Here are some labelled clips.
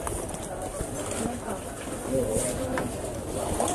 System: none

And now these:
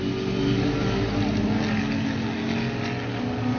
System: none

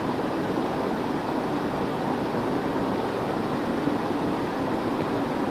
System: none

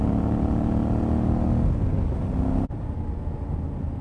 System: none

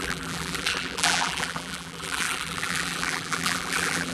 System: vocoder, BigVGAN v2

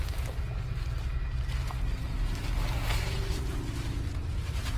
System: none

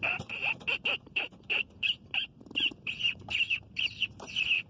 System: vocoder, BigVGAN v2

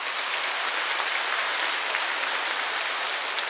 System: none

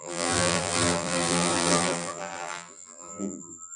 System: vocoder, BigVGAN v2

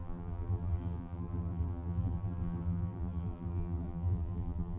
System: vocoder, BigVGAN v2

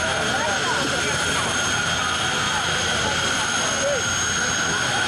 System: none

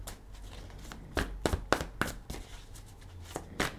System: none